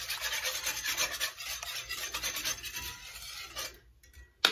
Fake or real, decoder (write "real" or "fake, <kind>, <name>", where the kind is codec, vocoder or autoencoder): real